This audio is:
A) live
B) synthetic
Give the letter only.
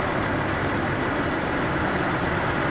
B